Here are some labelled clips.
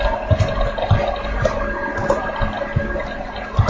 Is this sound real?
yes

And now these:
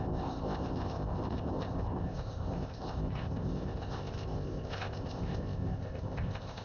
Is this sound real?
no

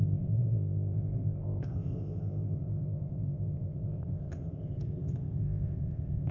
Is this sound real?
no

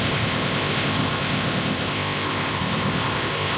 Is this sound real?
no